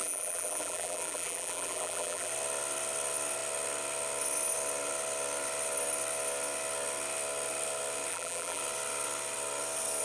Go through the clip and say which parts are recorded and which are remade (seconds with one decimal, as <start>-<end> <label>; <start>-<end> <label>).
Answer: 0.0-2.3 remade; 2.3-8.1 recorded; 8.1-8.6 remade; 8.6-10.0 recorded